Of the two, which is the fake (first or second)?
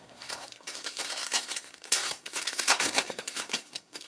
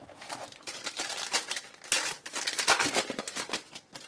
first